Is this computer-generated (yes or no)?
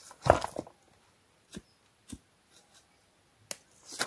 no